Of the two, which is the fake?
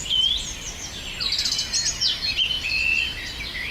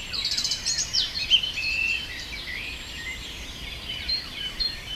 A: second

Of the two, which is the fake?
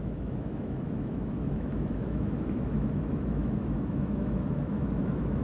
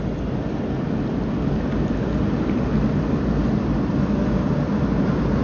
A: first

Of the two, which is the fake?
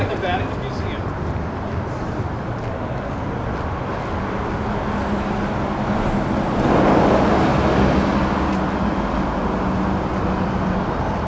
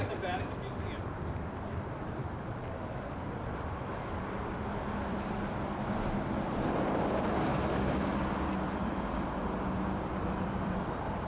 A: second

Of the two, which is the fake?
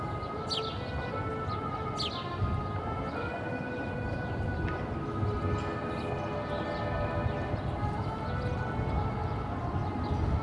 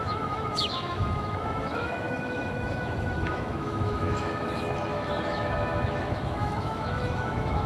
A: second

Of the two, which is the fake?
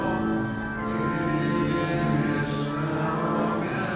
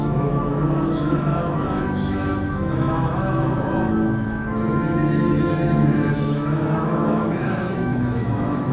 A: second